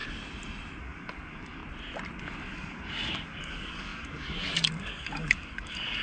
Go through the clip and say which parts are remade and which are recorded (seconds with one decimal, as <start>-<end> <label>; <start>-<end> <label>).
0.0-0.8 recorded; 0.8-1.6 remade; 1.6-2.2 recorded; 2.2-6.0 remade